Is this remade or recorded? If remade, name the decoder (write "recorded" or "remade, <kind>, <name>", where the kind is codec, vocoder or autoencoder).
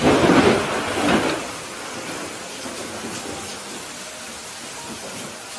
recorded